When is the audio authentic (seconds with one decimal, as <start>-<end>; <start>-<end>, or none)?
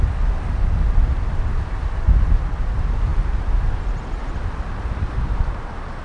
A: 0.0-6.0